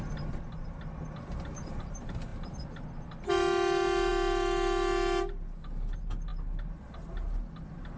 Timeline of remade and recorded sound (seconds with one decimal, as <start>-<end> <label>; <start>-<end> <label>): 0.0-8.0 recorded